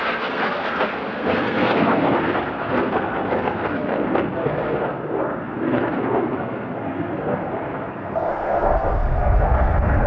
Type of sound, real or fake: fake